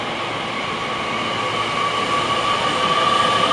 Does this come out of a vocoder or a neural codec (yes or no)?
no